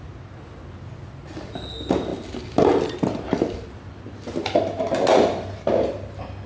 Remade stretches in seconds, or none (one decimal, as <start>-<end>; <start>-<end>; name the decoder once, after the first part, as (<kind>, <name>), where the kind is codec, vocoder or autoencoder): none